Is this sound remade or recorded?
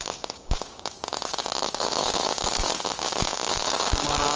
remade